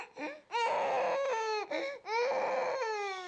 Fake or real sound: real